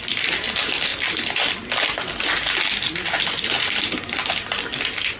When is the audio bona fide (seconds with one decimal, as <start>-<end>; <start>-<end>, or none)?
0.0-5.2